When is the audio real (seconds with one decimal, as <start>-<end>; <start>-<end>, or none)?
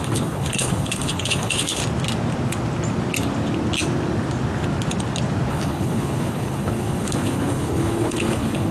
1.8-5.5